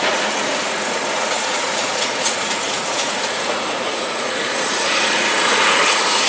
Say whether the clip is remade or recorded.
remade